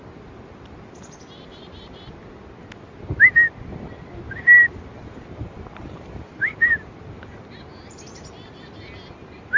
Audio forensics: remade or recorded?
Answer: recorded